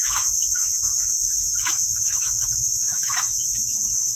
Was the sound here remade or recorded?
remade